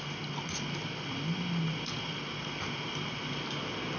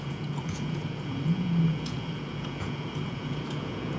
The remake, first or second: second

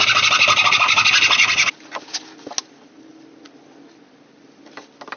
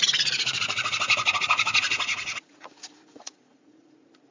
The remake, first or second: second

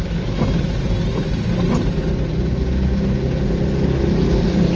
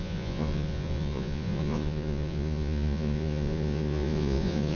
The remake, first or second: second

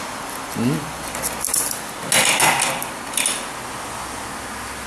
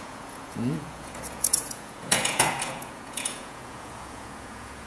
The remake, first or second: second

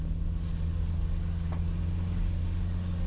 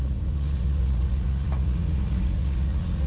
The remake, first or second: second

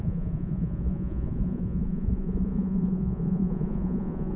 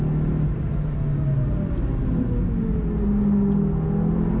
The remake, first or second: first